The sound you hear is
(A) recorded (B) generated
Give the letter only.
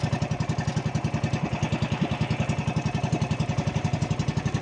A